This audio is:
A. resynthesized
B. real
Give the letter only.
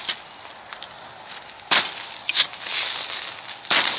B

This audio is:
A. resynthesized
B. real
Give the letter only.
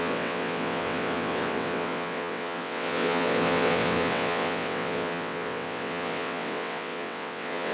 A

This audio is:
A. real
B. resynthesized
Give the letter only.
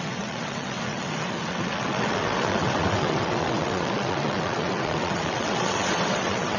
B